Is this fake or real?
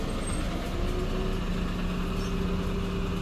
real